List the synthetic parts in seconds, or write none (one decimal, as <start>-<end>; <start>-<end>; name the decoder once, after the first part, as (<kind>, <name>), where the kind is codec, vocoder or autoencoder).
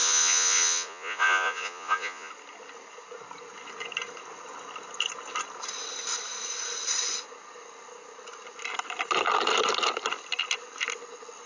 0.0-2.3 (vocoder, Vocos)